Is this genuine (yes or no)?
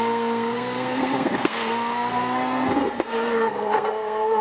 no